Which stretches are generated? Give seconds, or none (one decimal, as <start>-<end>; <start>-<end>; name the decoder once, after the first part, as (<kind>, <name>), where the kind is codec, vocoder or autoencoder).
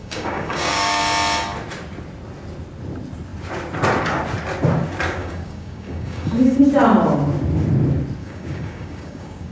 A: 0.0-1.0 (codec, DAC); 5.2-6.6; 8.2-9.5